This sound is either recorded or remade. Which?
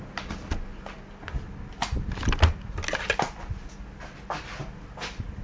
recorded